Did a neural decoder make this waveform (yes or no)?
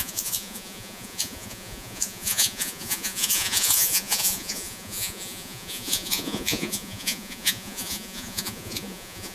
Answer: yes